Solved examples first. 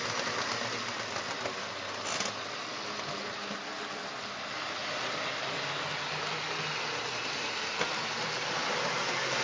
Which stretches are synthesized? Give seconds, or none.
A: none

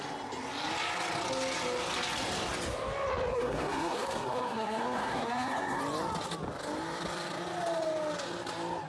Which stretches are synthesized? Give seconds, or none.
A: 3.3-5.8

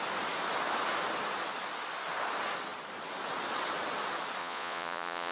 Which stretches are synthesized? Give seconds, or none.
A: 4.4-5.3